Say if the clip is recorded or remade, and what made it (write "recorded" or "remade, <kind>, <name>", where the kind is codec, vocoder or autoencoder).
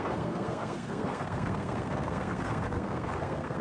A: remade, codec, SNAC